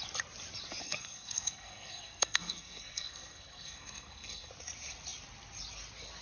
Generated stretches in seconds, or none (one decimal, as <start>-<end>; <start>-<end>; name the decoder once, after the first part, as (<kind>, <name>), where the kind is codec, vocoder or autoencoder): 0.8-4.5 (codec, SNAC)